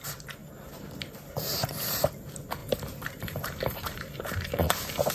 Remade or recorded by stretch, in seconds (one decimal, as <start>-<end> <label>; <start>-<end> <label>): 0.0-0.4 recorded; 0.4-2.1 remade; 2.1-2.6 recorded; 2.6-5.1 remade

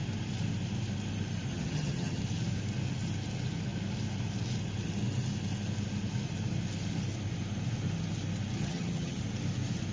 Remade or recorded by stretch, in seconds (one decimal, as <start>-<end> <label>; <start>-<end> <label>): 0.0-1.5 recorded; 1.5-2.2 remade; 2.2-8.6 recorded; 8.6-9.2 remade; 9.2-9.9 recorded